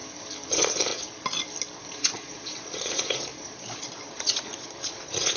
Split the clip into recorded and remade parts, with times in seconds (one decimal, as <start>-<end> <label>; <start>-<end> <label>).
0.0-0.5 recorded; 0.5-0.9 remade; 0.9-1.8 recorded; 1.8-5.4 remade